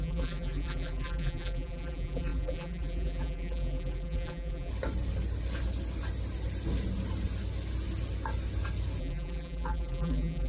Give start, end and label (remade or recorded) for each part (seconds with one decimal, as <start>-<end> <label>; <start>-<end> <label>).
0.0-4.7 remade; 4.7-9.0 recorded; 9.0-10.5 remade